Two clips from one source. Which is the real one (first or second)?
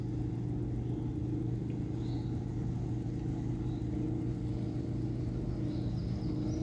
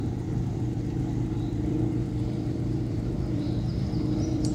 first